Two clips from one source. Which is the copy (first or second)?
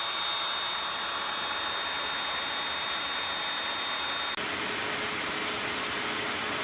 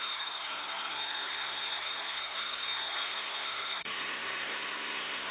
second